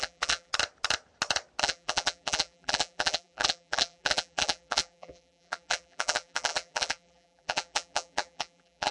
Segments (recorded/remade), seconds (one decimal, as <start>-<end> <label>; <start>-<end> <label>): 0.0-0.5 remade; 0.5-1.6 recorded; 1.6-8.9 remade